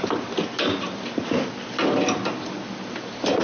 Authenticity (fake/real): fake